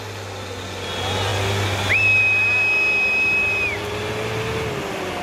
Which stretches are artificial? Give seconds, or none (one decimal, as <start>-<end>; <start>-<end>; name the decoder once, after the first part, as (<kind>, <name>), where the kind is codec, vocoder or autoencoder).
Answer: none